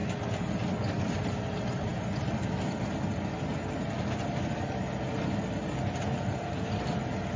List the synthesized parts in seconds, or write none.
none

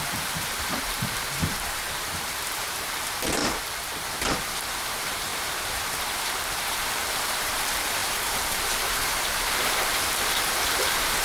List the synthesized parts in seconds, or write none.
0.0-3.4; 4.4-11.2

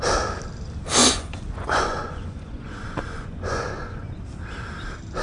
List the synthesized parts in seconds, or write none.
1.0-4.1

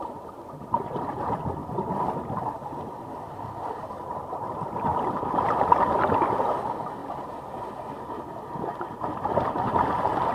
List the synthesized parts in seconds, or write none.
0.0-1.6; 4.0-7.0; 8.5-10.3

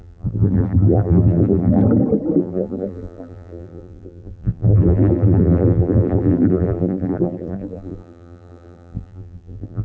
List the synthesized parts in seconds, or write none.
0.0-1.8; 2.4-9.8

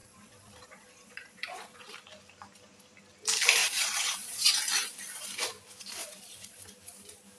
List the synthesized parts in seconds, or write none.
0.0-1.9; 3.6-4.5; 6.0-6.6

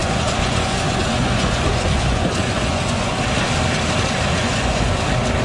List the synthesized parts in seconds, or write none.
0.0-3.1; 4.3-5.0

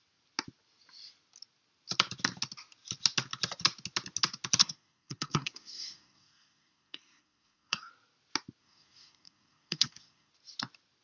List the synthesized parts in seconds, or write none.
4.6-7.9; 8.6-10.3